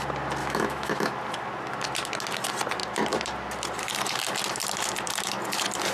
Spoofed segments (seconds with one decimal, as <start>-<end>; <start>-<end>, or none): 0.4-1.1